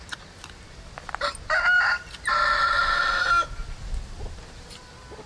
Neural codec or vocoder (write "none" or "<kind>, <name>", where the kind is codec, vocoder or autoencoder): none